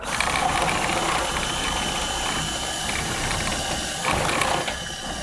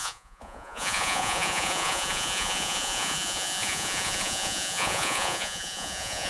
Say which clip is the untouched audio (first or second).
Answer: first